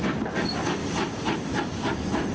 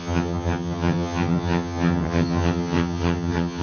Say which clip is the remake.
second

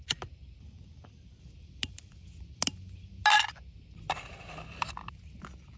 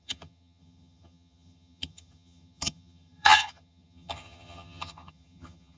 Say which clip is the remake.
second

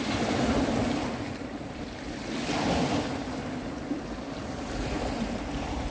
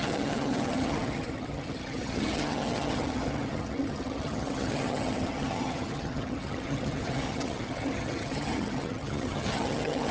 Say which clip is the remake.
second